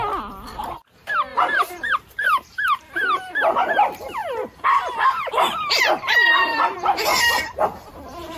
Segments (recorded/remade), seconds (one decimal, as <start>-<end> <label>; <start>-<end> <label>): 0.0-1.3 recorded; 1.3-3.3 remade; 3.3-4.2 recorded; 4.2-8.4 remade